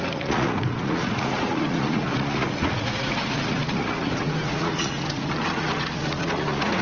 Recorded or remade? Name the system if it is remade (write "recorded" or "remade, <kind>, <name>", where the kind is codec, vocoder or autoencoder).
remade, vocoder, Vocos